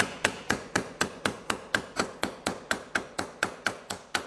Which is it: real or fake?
fake